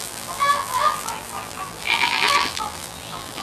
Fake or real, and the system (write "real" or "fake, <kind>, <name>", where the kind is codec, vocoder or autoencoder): fake, vocoder, BigVGAN v2